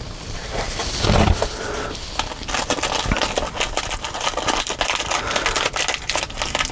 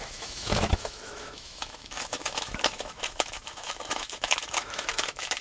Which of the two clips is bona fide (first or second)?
first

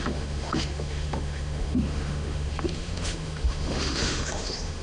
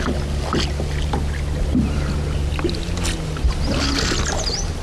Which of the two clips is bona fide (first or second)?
second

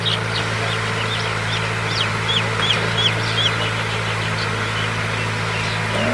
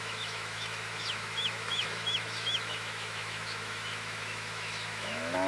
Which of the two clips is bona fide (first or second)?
first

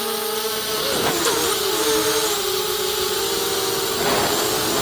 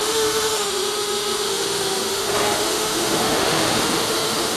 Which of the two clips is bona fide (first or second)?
first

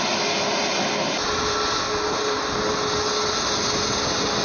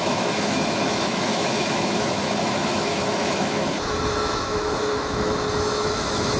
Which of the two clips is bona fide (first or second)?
first